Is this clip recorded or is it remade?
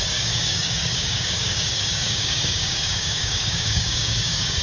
remade